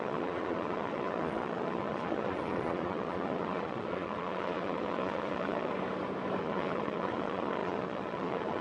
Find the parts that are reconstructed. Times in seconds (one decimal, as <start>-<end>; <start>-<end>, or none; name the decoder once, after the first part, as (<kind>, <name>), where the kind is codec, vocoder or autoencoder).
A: 0.0-5.7 (vocoder, Vocos); 6.4-8.6